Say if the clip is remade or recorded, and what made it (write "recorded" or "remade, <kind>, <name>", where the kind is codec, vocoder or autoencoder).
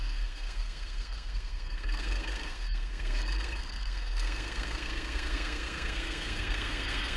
remade, codec, SNAC